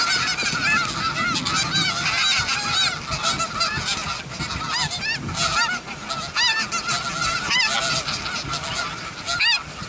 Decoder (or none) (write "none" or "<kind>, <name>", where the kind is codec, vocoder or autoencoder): none